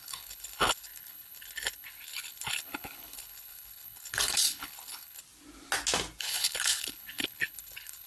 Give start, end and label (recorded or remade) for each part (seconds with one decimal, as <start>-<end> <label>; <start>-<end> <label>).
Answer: 0.0-5.2 remade; 5.2-6.2 recorded; 6.2-8.1 remade